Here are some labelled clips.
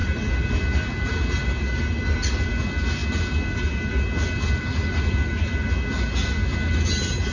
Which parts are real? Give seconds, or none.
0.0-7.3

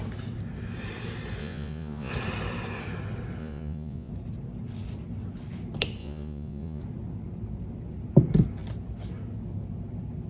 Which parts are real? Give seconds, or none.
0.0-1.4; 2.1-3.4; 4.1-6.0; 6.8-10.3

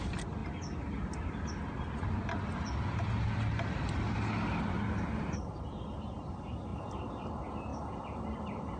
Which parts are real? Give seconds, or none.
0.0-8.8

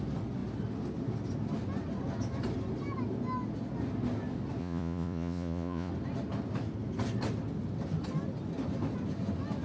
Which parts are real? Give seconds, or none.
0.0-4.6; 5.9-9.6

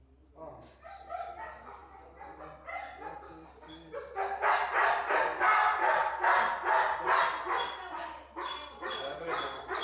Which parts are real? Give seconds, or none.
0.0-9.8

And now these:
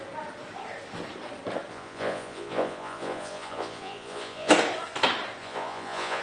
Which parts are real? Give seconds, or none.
0.0-1.7; 4.5-5.4

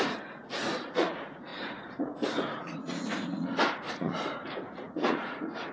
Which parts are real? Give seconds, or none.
none

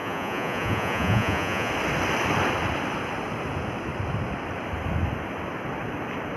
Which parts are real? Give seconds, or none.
1.7-6.4